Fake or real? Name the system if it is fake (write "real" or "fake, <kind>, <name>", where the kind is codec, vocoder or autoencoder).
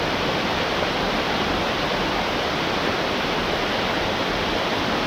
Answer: real